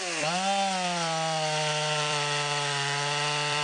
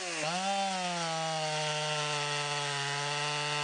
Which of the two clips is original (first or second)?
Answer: second